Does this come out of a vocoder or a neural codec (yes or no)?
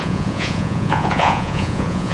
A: yes